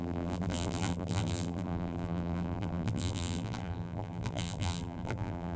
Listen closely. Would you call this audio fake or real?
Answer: fake